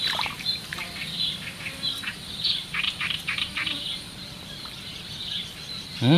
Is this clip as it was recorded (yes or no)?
no